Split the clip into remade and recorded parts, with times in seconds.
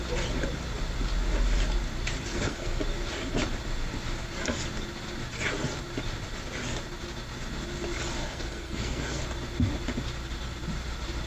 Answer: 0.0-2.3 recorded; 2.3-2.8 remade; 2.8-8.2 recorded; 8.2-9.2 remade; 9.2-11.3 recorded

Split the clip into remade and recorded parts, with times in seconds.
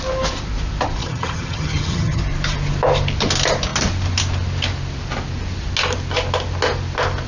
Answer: 0.0-1.0 recorded; 1.0-2.2 remade; 2.2-7.3 recorded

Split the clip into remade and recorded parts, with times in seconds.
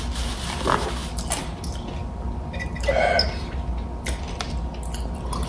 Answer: 0.0-5.5 recorded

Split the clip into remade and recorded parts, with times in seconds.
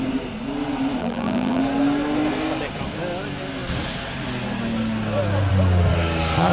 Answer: 0.0-1.0 recorded; 1.0-1.6 remade; 1.6-6.5 recorded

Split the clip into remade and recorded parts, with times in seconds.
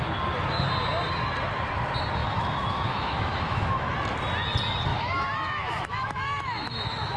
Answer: 0.0-2.2 recorded; 2.2-3.9 remade; 3.9-4.9 recorded; 4.9-7.2 remade